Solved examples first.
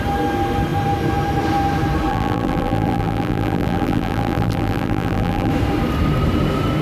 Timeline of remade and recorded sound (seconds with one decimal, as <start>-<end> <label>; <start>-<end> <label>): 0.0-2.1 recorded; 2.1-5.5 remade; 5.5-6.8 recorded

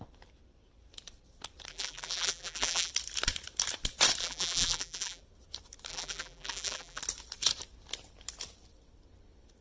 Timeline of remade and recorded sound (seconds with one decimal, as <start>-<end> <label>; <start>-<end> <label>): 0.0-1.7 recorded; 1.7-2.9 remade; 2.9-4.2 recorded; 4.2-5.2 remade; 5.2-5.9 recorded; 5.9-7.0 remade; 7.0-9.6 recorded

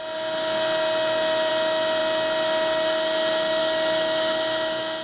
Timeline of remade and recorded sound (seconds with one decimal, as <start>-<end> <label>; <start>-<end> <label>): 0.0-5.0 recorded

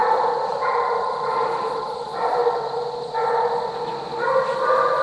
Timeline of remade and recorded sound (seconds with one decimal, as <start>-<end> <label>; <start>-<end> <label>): 0.0-0.8 recorded; 0.8-2.4 remade; 2.4-5.0 recorded

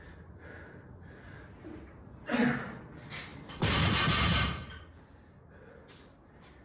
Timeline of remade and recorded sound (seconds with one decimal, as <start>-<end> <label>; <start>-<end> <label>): 0.0-3.3 recorded; 3.3-3.8 remade; 3.8-4.3 recorded; 4.3-4.8 remade; 4.8-6.6 recorded

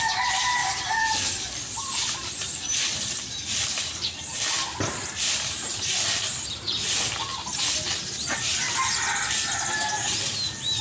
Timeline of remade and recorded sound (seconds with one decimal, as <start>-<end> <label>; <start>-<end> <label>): 0.0-0.6 recorded; 0.6-4.5 remade; 4.5-10.8 recorded

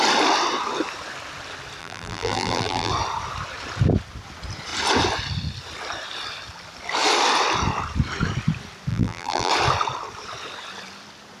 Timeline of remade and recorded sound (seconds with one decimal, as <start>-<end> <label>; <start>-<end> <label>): 0.0-1.8 recorded; 1.8-2.9 remade; 2.9-8.9 recorded; 8.9-9.5 remade; 9.5-11.4 recorded